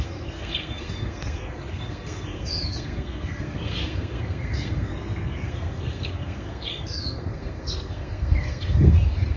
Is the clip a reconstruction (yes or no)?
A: yes